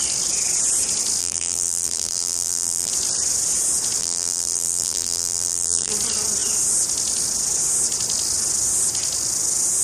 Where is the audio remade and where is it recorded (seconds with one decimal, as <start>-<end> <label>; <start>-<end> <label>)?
0.0-1.2 recorded; 1.2-2.9 remade; 2.9-4.0 recorded; 4.0-5.9 remade; 5.9-9.8 recorded